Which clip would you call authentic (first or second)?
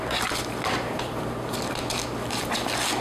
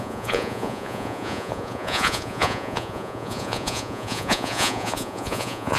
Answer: first